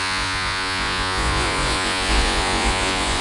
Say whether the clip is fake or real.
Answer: fake